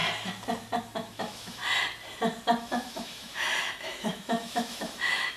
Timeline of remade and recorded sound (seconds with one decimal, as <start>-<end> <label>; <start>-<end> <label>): 0.0-0.8 recorded; 0.8-1.6 remade; 1.6-2.6 recorded; 2.6-5.4 remade